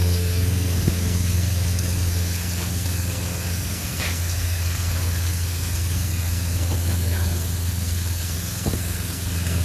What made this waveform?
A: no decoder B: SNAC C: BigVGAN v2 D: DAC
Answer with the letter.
B